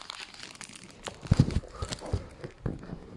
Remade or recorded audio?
recorded